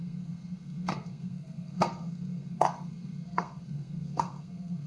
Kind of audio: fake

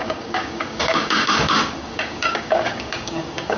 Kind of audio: fake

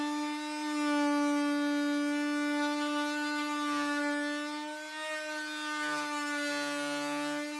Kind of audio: real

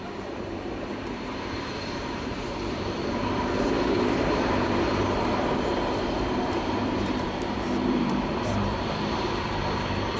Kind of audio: fake